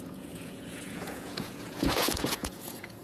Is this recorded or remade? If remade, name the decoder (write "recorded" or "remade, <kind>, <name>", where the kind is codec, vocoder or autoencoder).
remade, vocoder, Vocos